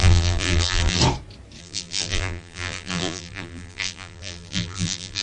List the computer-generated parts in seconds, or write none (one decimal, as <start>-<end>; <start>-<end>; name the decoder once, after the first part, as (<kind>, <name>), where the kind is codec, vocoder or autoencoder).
0.0-1.0 (vocoder, BigVGAN v2); 1.6-5.2